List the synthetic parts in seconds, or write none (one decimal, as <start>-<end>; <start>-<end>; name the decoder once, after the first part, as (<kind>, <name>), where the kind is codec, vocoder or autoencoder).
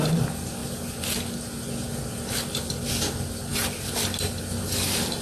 none